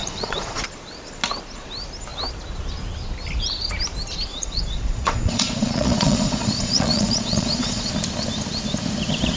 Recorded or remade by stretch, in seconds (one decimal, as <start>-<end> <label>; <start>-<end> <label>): 0.0-0.6 remade; 0.6-4.3 recorded; 4.3-7.9 remade; 7.9-9.4 recorded